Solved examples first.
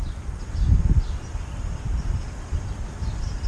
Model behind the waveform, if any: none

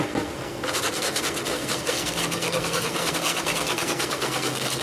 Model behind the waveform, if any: codec, SNAC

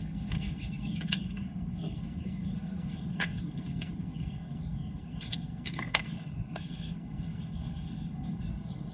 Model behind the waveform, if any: codec, SNAC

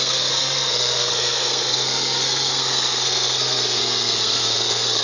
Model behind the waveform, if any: codec, SNAC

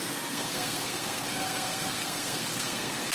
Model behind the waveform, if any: codec, SNAC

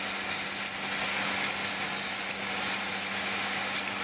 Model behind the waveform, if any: none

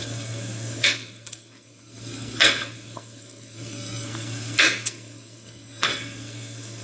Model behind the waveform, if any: codec, SNAC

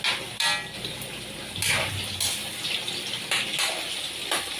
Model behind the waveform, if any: none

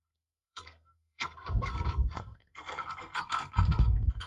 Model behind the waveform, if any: codec, SNAC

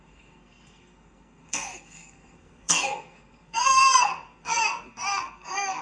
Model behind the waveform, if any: codec, SNAC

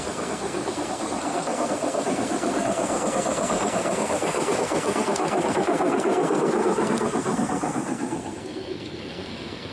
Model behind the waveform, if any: codec, SNAC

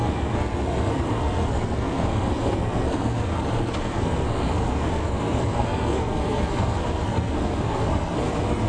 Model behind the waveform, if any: codec, SNAC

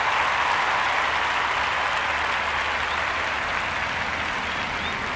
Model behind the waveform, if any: none